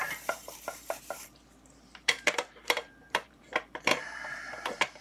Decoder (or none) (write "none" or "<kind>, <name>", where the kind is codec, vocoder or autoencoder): vocoder, BigVGAN v2